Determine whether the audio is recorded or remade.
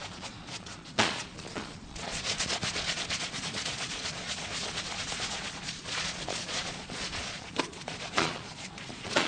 remade